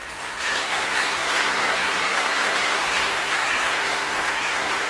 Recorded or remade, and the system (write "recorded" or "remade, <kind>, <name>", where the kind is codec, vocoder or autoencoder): remade, codec, SNAC